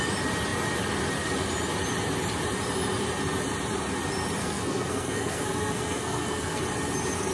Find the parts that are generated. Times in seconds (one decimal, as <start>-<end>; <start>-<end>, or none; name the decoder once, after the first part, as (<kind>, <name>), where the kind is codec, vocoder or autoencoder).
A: 4.4-6.6 (codec, SNAC)